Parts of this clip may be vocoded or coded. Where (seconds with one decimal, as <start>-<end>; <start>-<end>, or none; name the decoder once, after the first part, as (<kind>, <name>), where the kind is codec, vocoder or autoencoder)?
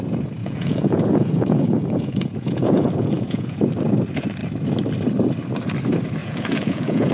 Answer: 0.4-3.6 (vocoder, Vocos); 6.2-7.1